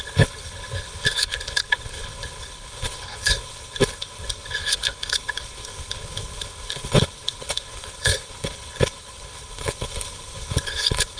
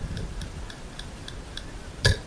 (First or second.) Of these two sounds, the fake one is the first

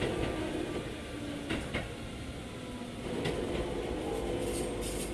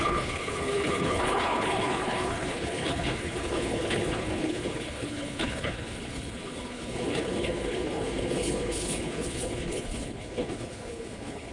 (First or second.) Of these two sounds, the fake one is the second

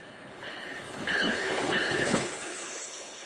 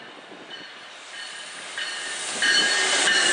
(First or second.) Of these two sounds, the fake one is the first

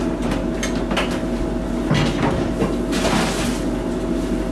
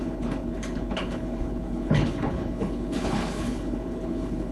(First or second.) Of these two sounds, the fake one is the second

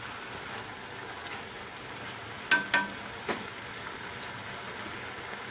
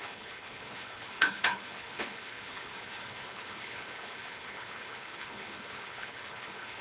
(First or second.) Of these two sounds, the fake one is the second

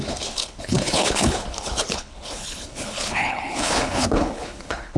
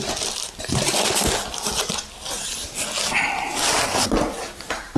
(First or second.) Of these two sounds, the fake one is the first